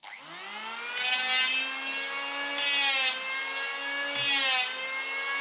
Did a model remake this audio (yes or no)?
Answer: no